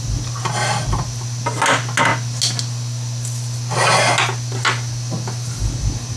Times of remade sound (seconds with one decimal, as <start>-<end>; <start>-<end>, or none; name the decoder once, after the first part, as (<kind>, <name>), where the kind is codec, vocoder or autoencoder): none